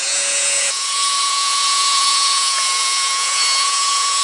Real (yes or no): no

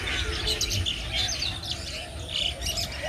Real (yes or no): yes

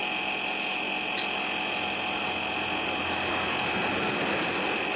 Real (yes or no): yes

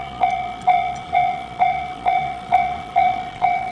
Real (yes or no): no